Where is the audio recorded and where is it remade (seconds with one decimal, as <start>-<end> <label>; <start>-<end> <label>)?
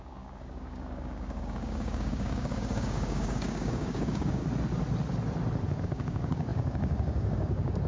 0.0-4.4 remade; 4.4-5.8 recorded; 5.8-7.9 remade